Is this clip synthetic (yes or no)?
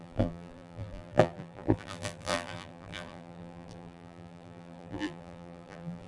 yes